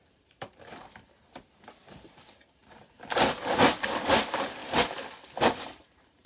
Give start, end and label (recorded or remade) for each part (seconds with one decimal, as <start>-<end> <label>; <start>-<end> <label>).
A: 0.0-2.6 remade; 2.6-3.4 recorded; 3.4-4.6 remade; 4.6-5.5 recorded; 5.5-6.3 remade